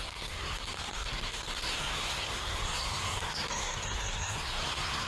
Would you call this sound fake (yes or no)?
yes